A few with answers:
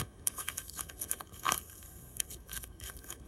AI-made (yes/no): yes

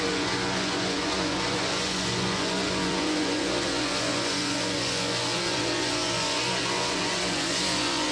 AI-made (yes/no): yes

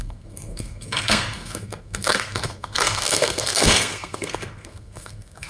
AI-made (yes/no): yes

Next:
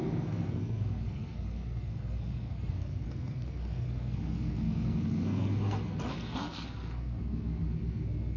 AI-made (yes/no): yes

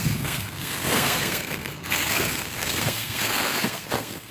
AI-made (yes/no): yes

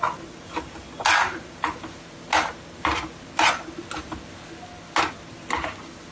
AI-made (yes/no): no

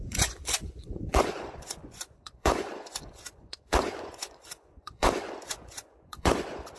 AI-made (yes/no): yes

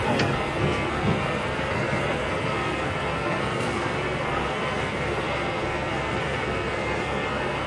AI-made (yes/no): yes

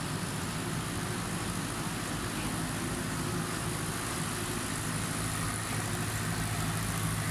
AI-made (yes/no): no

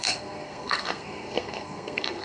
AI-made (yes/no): yes